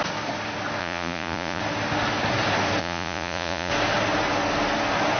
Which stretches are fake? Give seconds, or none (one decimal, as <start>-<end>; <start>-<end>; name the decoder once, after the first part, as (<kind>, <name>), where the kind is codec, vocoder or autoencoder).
0.8-1.6 (vocoder, Vocos); 2.8-3.7